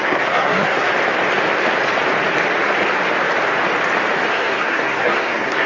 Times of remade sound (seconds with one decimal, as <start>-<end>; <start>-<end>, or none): 0.0-0.9; 4.3-5.7